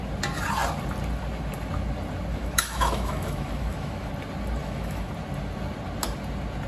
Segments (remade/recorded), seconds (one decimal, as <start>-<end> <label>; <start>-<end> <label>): 0.0-2.3 recorded; 2.3-4.1 remade; 4.1-4.6 recorded; 4.6-5.1 remade; 5.1-6.7 recorded